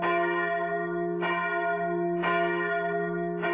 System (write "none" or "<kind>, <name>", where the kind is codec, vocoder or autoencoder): none